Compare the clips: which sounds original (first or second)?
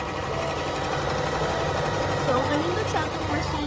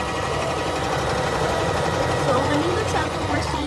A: first